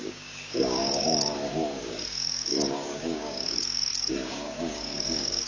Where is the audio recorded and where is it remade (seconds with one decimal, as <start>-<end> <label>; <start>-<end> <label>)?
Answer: 0.0-5.5 remade